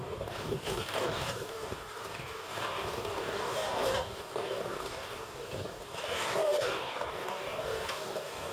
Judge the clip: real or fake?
fake